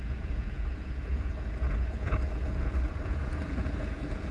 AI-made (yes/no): yes